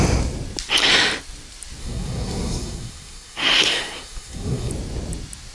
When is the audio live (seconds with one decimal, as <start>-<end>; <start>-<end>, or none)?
0.0-1.8; 4.7-5.5